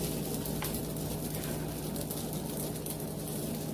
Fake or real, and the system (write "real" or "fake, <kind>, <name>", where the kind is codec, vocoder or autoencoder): real